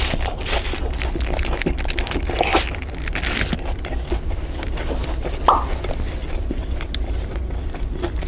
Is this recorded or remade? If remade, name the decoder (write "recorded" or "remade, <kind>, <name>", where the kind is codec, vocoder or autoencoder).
recorded